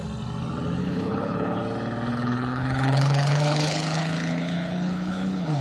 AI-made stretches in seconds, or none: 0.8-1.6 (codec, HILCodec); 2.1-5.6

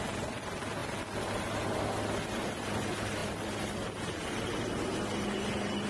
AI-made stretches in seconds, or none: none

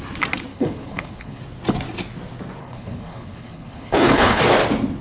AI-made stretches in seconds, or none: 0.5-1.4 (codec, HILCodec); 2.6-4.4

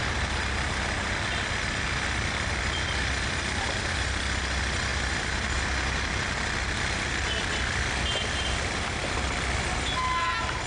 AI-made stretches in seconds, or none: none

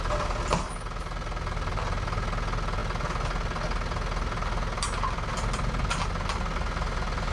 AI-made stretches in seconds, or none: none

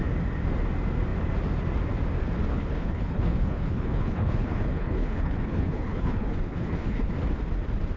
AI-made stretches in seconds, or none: 2.5-7.1 (codec, HILCodec)

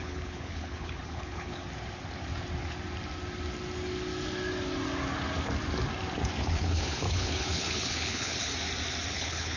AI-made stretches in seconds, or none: 0.0-1.6 (codec, HILCodec); 6.4-8.5; 9.1-9.6